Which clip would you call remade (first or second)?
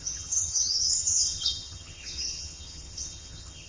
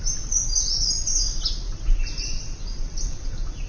first